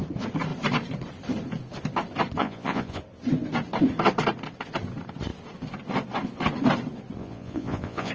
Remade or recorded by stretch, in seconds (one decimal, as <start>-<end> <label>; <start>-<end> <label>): 0.0-2.4 recorded; 2.4-3.0 remade; 3.0-7.2 recorded; 7.2-8.1 remade